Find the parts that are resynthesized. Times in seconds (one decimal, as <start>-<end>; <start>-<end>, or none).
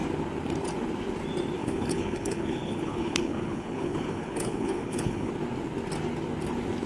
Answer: 1.6-5.3